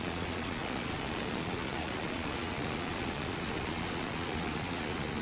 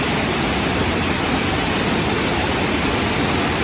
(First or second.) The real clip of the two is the second